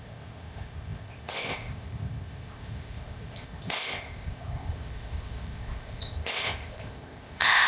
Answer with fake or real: fake